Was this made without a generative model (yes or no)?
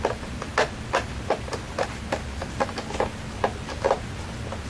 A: yes